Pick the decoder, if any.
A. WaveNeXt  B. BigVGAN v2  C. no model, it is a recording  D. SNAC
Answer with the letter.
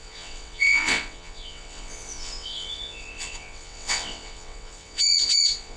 A